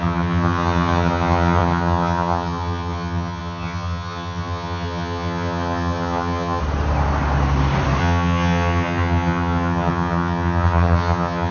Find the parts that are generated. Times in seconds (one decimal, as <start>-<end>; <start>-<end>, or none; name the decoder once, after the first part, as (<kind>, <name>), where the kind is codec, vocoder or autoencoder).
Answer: 0.0-6.6 (vocoder, HiFi-GAN); 8.0-11.5